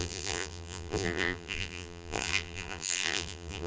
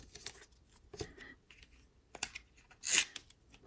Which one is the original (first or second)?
second